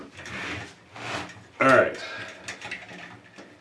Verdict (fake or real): real